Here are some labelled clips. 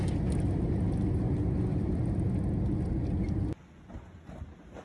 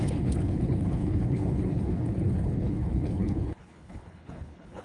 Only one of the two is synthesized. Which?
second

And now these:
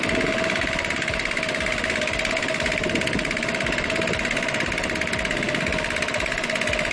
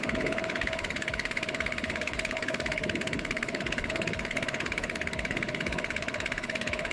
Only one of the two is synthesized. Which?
second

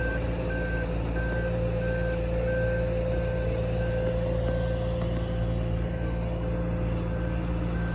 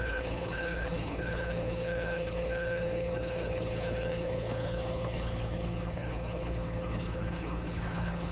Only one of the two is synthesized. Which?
second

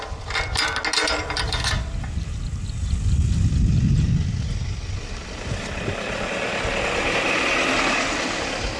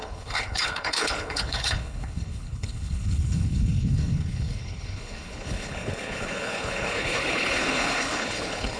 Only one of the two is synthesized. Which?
second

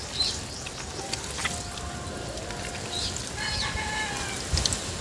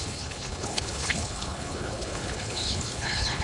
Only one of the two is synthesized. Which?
second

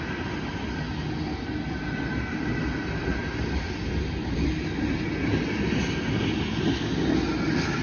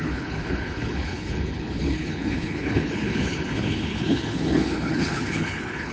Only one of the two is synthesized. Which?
second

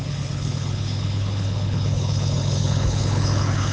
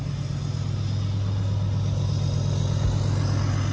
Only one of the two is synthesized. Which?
first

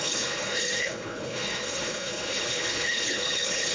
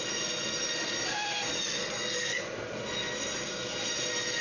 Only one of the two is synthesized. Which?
first